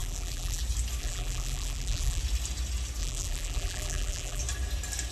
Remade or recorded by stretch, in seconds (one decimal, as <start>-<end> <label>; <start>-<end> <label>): 0.0-0.6 remade; 0.6-1.0 recorded; 1.0-2.2 remade; 2.2-3.0 recorded; 3.0-4.4 remade; 4.4-5.1 recorded